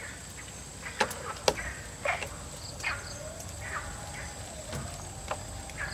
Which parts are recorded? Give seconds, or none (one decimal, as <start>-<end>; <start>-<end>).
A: 0.0-5.9